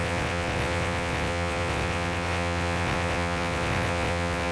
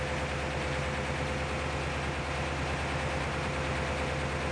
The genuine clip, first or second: second